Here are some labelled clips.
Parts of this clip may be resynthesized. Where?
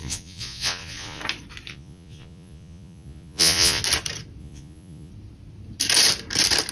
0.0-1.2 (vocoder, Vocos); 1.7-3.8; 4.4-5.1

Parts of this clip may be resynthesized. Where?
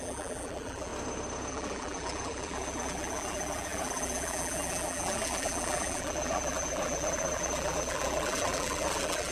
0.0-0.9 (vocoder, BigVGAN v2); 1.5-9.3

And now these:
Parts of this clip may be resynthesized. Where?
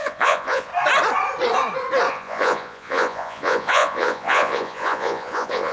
0.0-0.7 (vocoder, Vocos); 2.1-5.7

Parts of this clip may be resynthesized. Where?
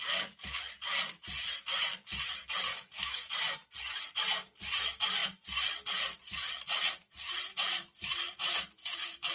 2.7-3.3 (autoencoder, DAC-VAE)